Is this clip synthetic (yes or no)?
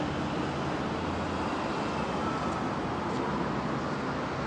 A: no